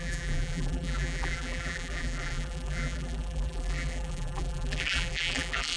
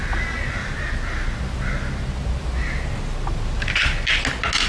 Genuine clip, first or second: second